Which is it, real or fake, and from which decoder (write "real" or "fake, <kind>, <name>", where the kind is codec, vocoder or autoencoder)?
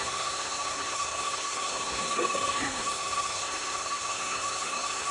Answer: fake, codec, SNAC